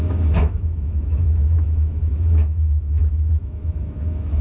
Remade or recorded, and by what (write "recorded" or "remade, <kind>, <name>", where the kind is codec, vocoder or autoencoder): remade, autoencoder, DAC-VAE